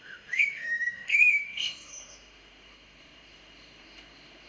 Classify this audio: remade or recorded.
remade